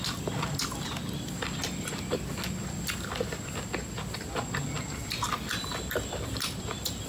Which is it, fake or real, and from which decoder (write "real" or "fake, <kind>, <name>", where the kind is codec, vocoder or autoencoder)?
real